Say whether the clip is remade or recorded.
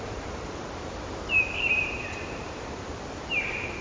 remade